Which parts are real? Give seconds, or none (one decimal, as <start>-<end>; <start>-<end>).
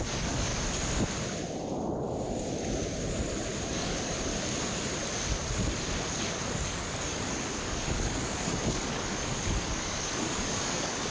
0.5-3.7; 4.3-6.5